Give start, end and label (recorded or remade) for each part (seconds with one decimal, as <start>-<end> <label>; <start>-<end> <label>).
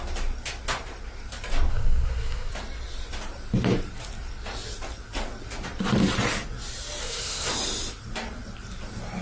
0.0-1.7 recorded; 1.7-2.5 remade; 2.5-7.0 recorded; 7.0-7.5 remade; 7.5-9.2 recorded